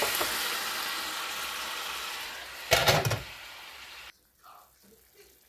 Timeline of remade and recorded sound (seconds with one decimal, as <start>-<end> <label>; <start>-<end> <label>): 0.0-2.8 recorded; 2.8-4.4 remade; 4.4-5.5 recorded